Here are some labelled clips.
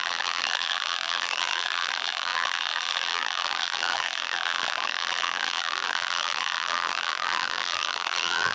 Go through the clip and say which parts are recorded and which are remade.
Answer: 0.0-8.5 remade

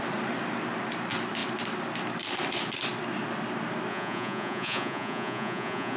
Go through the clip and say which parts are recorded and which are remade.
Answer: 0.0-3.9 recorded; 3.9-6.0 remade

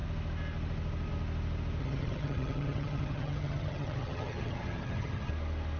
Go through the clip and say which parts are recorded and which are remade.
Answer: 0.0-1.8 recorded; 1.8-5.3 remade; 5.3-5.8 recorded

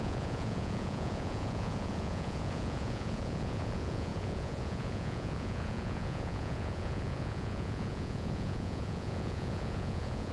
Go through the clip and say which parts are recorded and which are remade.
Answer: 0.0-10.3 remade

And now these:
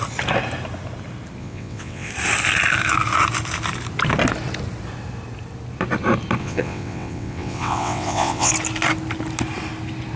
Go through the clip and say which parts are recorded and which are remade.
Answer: 0.0-1.4 recorded; 1.4-2.1 remade; 2.1-6.4 recorded; 6.4-8.5 remade; 8.5-10.2 recorded

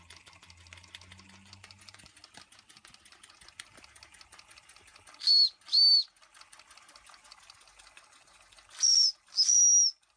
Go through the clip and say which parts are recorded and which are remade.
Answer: 0.0-10.2 recorded